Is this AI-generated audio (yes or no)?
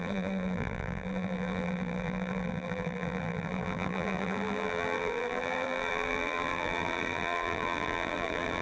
yes